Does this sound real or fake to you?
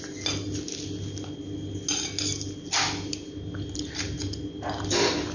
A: real